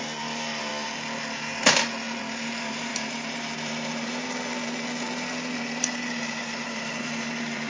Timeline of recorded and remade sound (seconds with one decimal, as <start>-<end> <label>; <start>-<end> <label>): 0.0-0.7 remade; 0.7-2.2 recorded; 2.2-7.7 remade